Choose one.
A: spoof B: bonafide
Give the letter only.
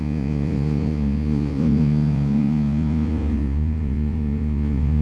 A